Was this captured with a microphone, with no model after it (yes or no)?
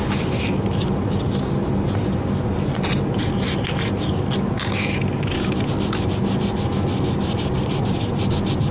yes